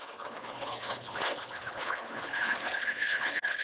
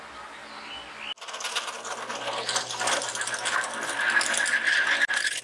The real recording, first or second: second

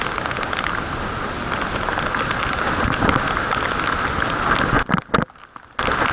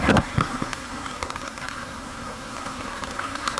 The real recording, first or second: first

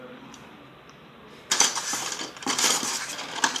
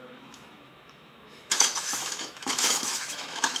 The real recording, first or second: first